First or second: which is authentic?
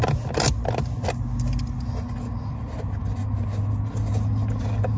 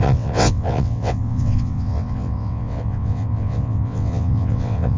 first